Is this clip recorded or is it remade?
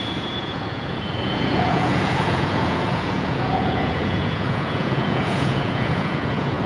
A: remade